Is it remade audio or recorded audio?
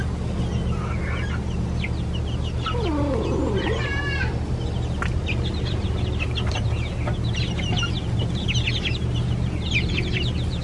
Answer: recorded